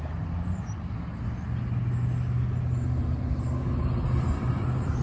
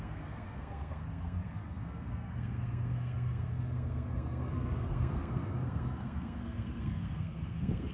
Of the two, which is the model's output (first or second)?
second